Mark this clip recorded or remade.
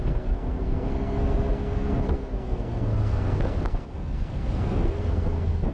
remade